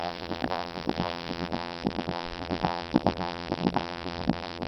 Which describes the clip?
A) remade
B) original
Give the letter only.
A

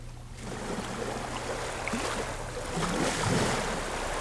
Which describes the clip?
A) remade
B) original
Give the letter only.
B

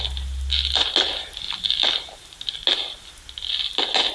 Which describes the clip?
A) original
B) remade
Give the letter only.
A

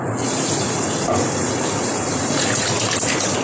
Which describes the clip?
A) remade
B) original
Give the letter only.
A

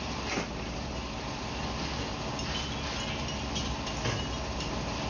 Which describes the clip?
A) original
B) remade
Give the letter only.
A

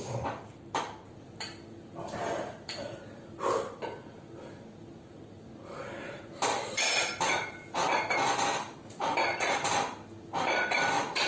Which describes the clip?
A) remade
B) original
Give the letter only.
A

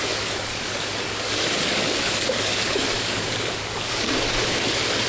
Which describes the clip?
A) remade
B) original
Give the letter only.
A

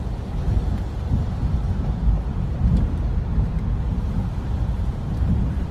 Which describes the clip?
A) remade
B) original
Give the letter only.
A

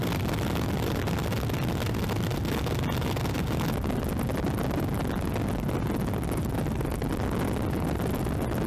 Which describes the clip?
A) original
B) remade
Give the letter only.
A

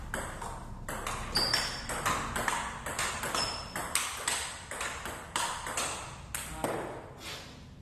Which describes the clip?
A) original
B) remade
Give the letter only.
A